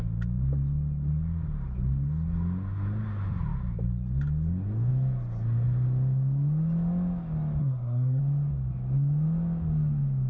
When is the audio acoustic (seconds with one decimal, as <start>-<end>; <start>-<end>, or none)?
0.0-7.6; 8.2-10.3